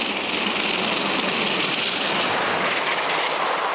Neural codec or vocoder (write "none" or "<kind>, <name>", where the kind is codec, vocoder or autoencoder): none